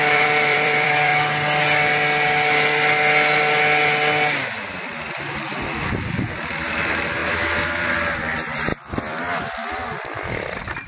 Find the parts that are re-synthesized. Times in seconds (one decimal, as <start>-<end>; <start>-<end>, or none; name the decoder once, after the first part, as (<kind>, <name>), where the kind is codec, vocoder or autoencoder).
0.0-1.1 (vocoder, BigVGAN v2); 5.2-8.7; 9.2-10.9